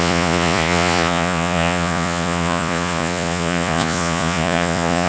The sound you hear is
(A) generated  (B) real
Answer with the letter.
A